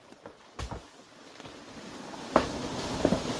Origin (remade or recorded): recorded